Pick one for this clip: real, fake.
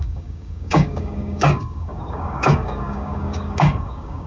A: fake